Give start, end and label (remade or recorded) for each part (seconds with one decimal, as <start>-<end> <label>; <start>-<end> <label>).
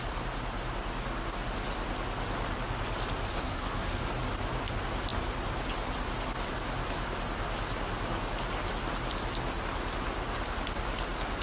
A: 0.0-3.3 recorded; 3.3-3.9 remade; 3.9-11.4 recorded